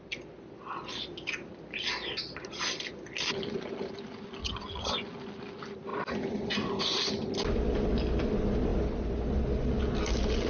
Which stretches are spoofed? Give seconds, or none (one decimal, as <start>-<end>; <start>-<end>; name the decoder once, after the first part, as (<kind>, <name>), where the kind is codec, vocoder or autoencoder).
4.4-4.9 (vocoder, HiFi-GAN)